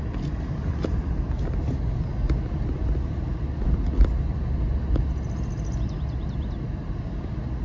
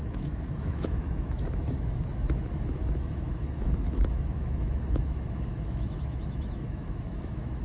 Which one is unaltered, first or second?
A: first